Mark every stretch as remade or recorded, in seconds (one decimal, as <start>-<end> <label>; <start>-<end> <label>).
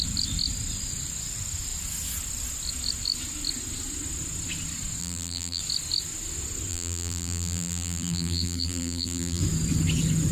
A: 0.0-5.0 recorded; 5.0-5.6 remade; 5.6-6.7 recorded; 6.7-9.4 remade; 9.4-10.3 recorded